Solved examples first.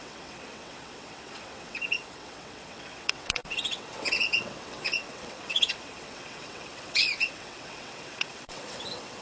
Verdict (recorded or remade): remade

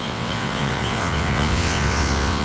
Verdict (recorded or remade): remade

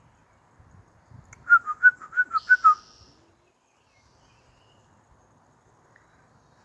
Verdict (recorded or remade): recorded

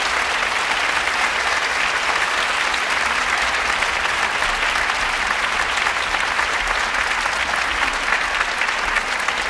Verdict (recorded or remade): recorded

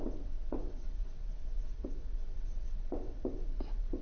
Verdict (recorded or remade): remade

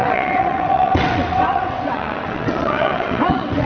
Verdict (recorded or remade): remade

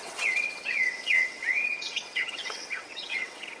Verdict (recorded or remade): remade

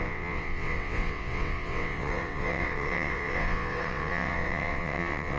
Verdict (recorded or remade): remade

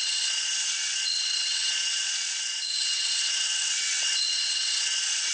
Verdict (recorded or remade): remade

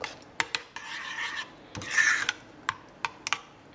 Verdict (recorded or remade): recorded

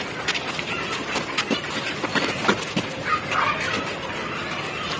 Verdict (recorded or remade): recorded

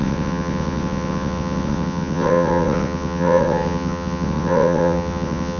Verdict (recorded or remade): remade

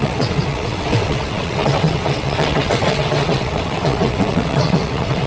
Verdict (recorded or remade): remade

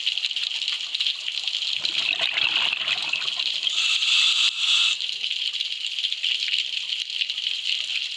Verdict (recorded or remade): recorded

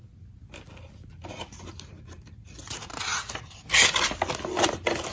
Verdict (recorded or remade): recorded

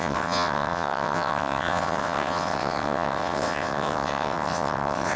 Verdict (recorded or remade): remade